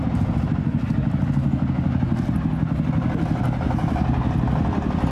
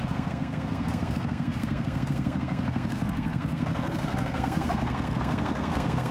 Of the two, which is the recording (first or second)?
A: first